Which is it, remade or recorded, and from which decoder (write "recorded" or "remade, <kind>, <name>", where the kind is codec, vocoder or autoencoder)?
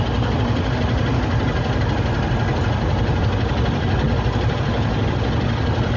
recorded